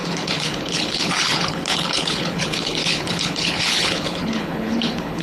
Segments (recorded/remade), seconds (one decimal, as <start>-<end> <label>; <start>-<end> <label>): 0.0-5.2 remade